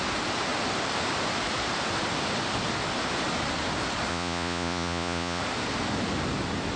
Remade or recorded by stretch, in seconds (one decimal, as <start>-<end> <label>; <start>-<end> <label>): 0.0-4.1 recorded; 4.1-5.4 remade; 5.4-6.8 recorded